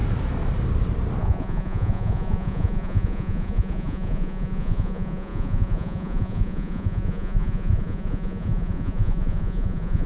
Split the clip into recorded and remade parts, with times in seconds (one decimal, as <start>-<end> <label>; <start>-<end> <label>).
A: 0.0-1.2 recorded; 1.2-10.1 remade